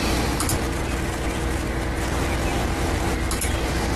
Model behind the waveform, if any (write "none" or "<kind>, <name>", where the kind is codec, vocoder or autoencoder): none